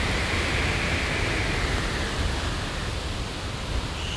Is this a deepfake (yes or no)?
no